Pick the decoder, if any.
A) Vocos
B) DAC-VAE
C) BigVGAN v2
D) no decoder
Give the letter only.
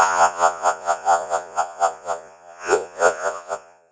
A